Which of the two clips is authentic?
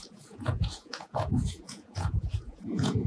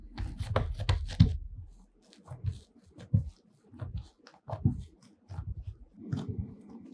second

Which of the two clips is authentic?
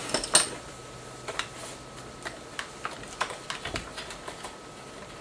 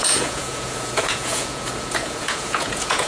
first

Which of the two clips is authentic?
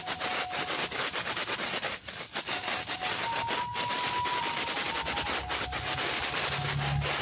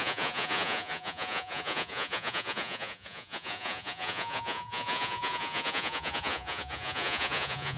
first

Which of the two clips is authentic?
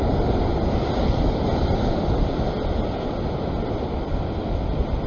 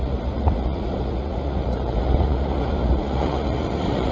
first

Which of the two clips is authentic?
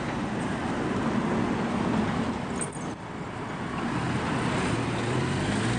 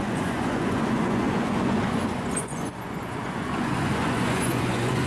first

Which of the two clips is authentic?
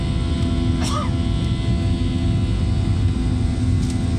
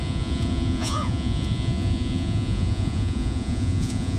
first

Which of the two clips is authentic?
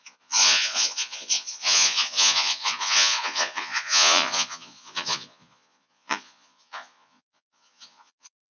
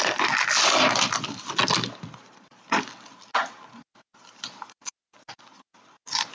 second